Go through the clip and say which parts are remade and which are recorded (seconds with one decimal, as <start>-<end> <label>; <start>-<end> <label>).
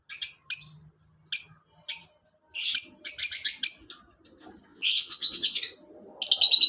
0.0-4.7 recorded; 4.7-5.6 remade; 5.6-6.7 recorded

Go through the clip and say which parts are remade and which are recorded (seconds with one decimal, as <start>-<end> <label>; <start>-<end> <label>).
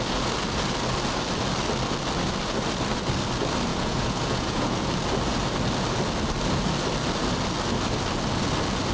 0.0-3.7 recorded; 3.7-4.9 remade; 4.9-8.9 recorded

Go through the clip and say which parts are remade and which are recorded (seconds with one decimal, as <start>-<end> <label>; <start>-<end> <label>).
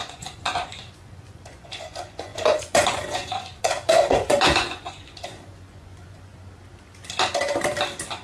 0.0-6.3 remade; 6.3-8.2 recorded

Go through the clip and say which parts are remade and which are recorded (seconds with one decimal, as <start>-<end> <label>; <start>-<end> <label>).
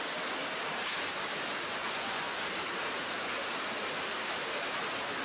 0.0-1.8 recorded; 1.8-2.4 remade; 2.4-5.2 recorded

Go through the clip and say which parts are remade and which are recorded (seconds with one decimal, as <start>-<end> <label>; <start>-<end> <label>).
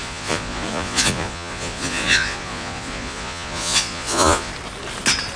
0.0-4.5 remade; 4.5-5.4 recorded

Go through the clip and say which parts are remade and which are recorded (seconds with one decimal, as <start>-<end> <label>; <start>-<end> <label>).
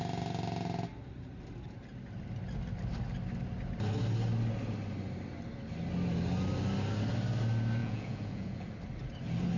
0.0-7.8 recorded; 7.8-8.7 remade; 8.7-9.6 recorded